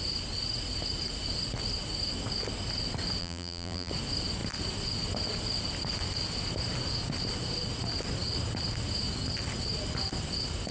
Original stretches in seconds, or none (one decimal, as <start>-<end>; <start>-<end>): 0.0-3.2; 3.9-10.7